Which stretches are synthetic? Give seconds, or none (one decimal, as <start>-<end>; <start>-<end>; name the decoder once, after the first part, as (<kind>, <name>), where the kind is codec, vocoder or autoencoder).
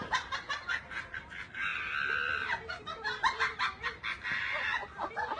none